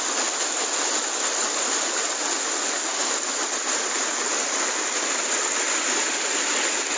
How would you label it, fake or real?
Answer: real